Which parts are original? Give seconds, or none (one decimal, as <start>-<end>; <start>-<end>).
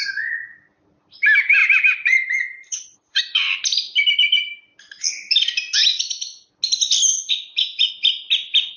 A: 0.0-1.6; 3.2-5.9; 6.5-7.1; 7.9-8.8